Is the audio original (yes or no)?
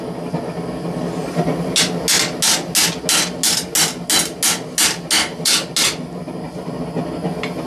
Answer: yes